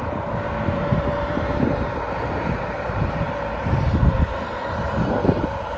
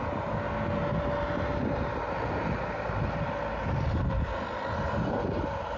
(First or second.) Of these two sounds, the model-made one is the first